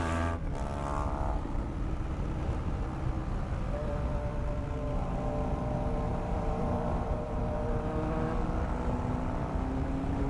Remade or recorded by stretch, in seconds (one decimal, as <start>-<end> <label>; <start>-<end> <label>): 0.0-6.1 recorded; 6.1-7.4 remade; 7.4-10.3 recorded